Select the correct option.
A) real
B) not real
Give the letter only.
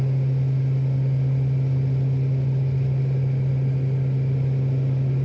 A